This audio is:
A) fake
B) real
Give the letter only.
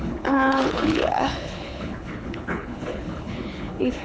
A